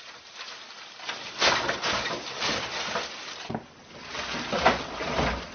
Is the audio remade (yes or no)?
no